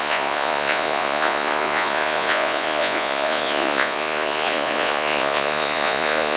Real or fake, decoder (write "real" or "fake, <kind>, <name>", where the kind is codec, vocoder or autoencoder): fake, vocoder, Vocos